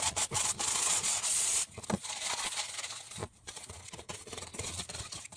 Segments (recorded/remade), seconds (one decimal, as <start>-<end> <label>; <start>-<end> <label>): 0.0-5.4 remade

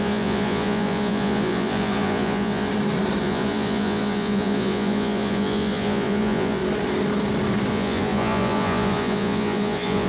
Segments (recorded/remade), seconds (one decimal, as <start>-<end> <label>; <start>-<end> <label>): 0.0-2.7 remade; 2.7-3.2 recorded; 3.2-6.6 remade; 6.6-7.7 recorded; 7.7-10.1 remade

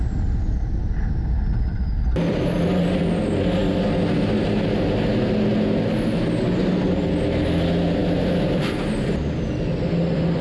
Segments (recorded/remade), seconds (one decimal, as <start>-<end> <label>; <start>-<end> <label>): 0.0-10.4 recorded

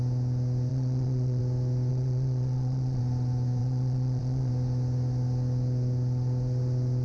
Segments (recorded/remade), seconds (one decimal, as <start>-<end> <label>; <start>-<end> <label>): 0.0-0.7 recorded; 0.7-1.4 remade; 1.4-1.9 recorded; 1.9-3.0 remade; 3.0-3.6 recorded; 3.6-4.5 remade; 4.5-7.0 recorded

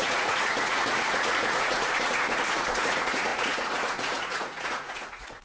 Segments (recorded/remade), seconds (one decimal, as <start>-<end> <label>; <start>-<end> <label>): 0.0-5.4 remade